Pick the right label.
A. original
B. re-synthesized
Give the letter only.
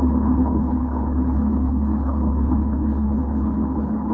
B